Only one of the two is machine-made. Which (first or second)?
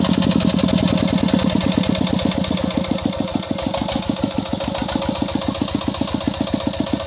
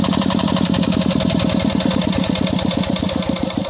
second